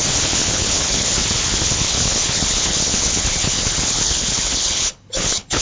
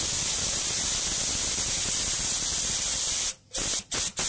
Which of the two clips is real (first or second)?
second